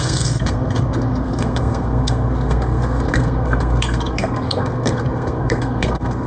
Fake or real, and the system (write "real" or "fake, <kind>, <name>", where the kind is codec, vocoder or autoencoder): fake, codec, SNAC